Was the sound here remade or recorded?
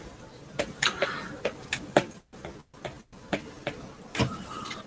remade